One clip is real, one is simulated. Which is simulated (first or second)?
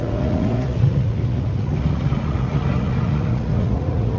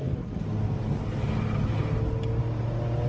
first